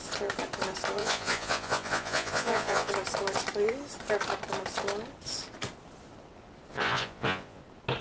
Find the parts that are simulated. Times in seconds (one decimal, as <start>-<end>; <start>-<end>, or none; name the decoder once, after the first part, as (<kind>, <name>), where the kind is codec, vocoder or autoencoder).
1.0-2.9 (vocoder, Vocos); 6.7-7.6